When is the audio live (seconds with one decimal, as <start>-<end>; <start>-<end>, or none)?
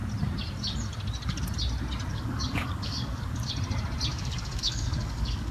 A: 0.0-2.1; 3.5-4.1